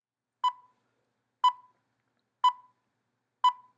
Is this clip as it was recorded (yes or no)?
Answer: yes